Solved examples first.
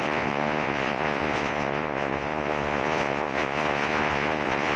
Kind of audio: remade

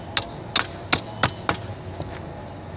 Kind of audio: recorded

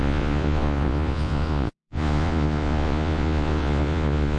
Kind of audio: remade